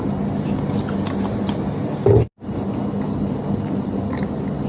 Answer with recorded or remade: recorded